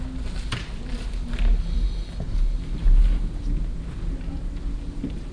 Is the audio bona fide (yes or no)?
yes